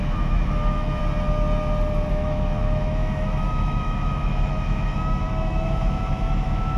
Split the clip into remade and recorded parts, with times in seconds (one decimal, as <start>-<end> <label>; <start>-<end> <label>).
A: 0.0-1.0 remade; 1.0-2.1 recorded; 2.1-6.8 remade